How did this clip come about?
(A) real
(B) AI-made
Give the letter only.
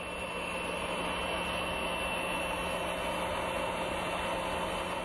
A